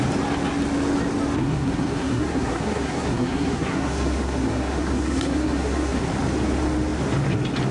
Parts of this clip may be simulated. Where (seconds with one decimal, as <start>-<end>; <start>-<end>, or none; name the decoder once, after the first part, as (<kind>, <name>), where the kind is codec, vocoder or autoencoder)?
1.4-6.0 (codec, SNAC)